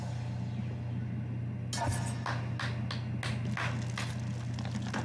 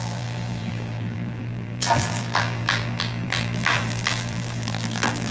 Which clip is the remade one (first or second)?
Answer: second